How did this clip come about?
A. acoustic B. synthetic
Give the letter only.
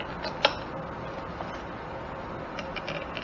A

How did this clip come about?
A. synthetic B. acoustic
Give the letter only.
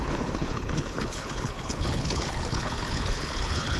A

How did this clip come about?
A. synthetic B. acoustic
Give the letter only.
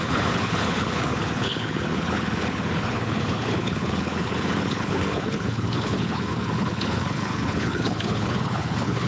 A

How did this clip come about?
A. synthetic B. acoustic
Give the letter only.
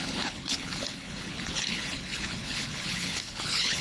A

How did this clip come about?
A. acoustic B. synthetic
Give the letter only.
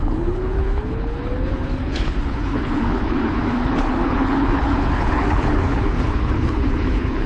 B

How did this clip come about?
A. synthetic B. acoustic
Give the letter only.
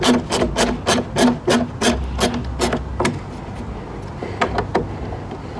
B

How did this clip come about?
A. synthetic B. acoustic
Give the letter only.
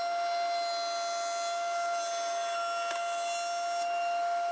B